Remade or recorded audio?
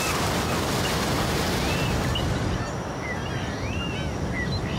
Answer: recorded